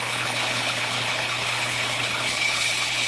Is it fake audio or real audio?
fake